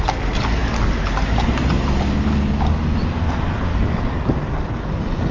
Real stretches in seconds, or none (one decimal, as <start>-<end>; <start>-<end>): 0.0-3.7; 4.2-5.3